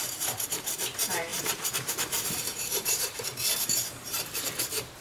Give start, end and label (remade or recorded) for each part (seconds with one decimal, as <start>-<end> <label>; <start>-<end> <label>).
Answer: 0.0-5.0 remade